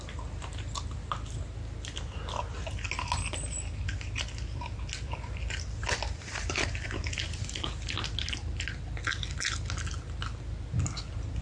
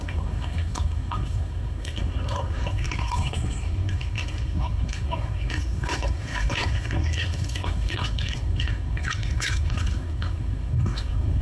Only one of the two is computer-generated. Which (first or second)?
second